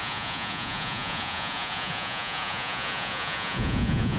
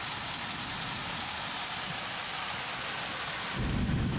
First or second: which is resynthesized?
first